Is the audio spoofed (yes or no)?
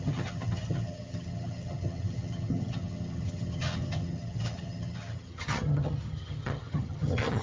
yes